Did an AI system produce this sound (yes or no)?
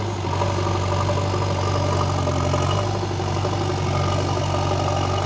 no